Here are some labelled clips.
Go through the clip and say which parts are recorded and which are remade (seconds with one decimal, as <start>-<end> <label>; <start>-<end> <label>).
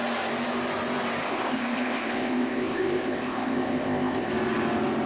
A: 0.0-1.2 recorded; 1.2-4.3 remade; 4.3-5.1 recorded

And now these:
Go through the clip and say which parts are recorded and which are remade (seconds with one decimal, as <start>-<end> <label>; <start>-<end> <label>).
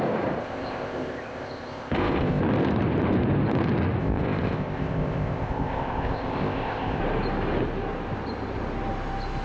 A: 0.0-0.4 recorded; 0.4-2.4 remade; 2.4-4.0 recorded; 4.0-7.0 remade; 7.0-9.4 recorded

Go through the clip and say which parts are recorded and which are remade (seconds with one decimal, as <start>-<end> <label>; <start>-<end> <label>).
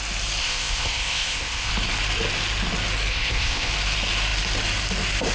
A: 0.0-0.4 recorded; 0.4-1.7 remade; 1.7-3.1 recorded; 3.1-3.7 remade; 3.7-5.3 recorded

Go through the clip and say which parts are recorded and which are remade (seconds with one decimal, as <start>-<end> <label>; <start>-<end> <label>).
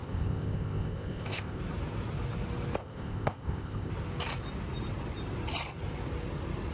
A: 0.0-1.6 remade; 1.6-2.8 recorded; 2.8-3.9 remade; 3.9-6.7 recorded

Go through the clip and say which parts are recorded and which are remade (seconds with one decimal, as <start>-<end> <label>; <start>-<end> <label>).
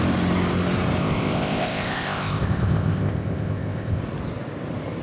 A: 0.0-1.0 recorded; 1.0-4.0 remade; 4.0-5.0 recorded